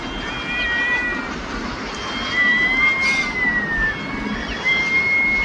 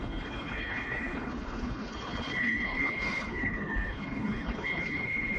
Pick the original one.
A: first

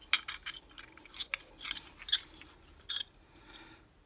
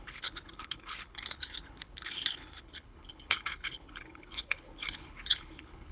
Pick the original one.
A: first